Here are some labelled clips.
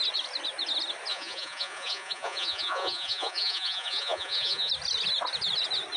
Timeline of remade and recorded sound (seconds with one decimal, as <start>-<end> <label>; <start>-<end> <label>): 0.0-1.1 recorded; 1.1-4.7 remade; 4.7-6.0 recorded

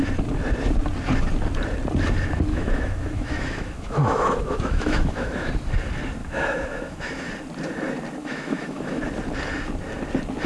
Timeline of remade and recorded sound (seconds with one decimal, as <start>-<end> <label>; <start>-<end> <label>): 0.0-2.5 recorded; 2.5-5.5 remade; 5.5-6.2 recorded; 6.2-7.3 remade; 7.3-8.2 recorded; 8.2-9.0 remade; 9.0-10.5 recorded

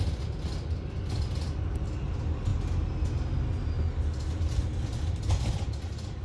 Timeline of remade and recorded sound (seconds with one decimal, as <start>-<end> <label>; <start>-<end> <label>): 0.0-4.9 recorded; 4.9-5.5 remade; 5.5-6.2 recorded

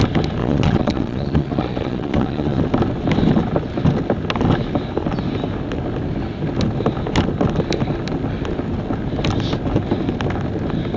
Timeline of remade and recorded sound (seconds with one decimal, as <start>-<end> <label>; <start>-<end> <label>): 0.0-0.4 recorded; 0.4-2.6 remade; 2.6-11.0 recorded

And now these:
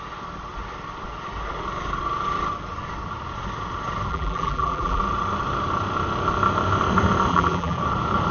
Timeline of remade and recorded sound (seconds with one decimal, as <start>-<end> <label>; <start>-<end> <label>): 0.0-4.1 recorded; 4.1-5.0 remade; 5.0-7.3 recorded; 7.3-7.8 remade; 7.8-8.3 recorded